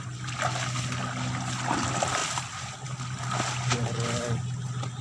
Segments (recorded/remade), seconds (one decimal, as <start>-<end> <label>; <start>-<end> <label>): 0.0-5.0 recorded